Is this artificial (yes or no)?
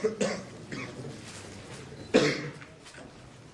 no